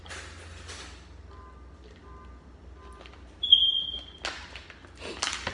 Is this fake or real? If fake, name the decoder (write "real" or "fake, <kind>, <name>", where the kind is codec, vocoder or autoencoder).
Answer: real